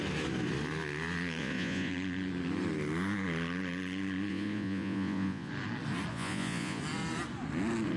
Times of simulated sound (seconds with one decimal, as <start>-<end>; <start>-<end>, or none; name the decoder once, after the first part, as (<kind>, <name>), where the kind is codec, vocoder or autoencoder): 1.4-1.9 (vocoder, Vocos); 4.3-5.5; 6.1-6.8